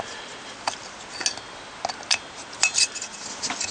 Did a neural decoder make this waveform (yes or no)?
no